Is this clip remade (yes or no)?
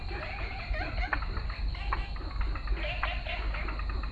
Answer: no